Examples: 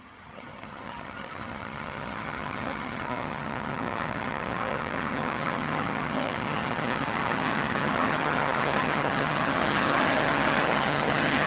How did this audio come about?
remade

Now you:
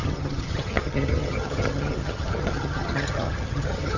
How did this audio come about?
remade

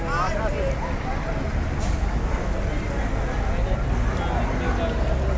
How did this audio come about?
recorded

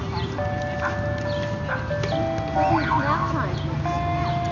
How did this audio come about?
recorded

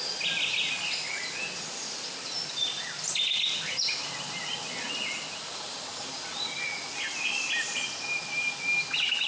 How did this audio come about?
recorded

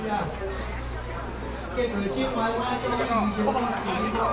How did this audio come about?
recorded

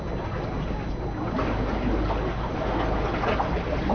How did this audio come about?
recorded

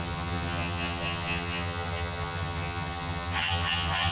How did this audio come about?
remade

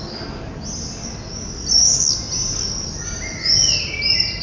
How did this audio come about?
recorded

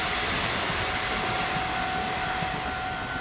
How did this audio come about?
recorded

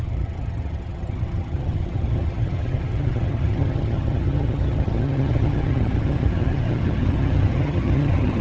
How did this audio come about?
remade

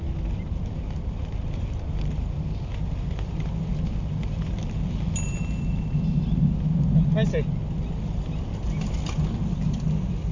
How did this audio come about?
recorded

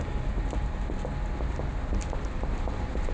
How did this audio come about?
recorded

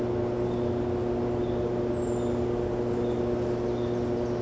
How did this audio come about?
recorded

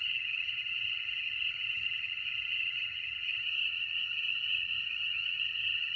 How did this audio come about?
remade